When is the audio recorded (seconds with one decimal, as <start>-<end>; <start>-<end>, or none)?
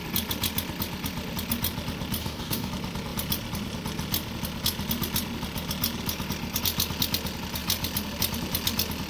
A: 0.0-2.2; 2.7-9.1